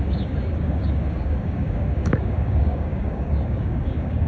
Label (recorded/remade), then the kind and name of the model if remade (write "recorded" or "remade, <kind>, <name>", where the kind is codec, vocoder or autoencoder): remade, codec, DAC